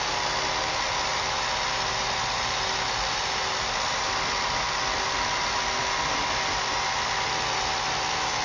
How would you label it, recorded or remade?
recorded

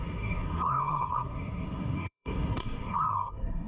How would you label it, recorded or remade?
remade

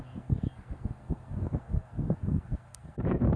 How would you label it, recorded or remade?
remade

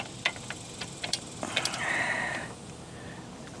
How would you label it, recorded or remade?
remade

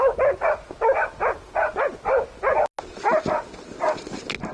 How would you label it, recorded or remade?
recorded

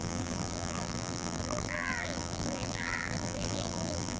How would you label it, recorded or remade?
remade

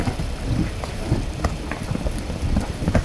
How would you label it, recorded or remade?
recorded